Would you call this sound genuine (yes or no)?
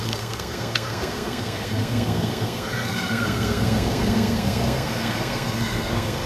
no